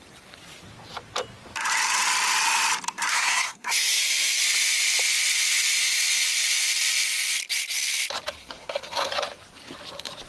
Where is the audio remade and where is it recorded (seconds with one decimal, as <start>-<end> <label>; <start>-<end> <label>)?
0.0-3.1 recorded; 3.1-4.0 remade; 4.0-8.4 recorded; 8.4-9.1 remade; 9.1-10.3 recorded